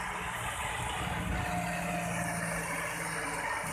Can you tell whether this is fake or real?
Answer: real